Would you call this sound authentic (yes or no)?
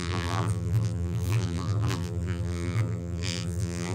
no